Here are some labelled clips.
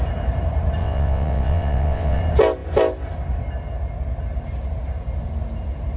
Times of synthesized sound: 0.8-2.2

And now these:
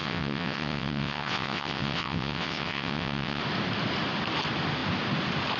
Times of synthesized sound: 0.0-3.4

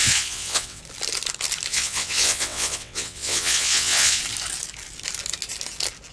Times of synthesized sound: 0.0-0.8; 1.7-4.2

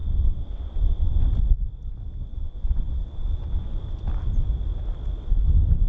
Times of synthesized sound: 0.0-1.2; 2.3-3.7

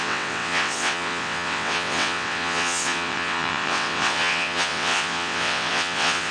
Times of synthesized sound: 0.0-6.3

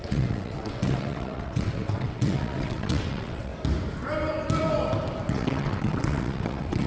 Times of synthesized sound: 0.0-3.5; 5.3-6.9